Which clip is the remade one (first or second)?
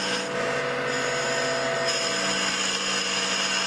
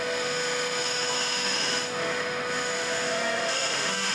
second